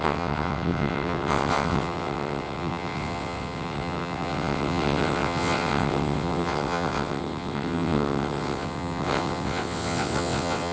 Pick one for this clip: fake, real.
fake